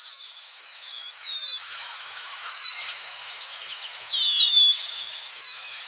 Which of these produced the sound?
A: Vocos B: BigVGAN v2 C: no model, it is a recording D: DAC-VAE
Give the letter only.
D